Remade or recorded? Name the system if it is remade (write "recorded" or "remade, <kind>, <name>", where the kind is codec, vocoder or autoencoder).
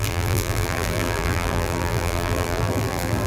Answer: remade, vocoder, BigVGAN v2